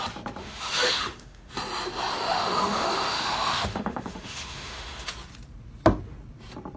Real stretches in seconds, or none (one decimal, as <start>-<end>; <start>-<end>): 0.0-0.4; 1.5-2.1; 5.1-6.8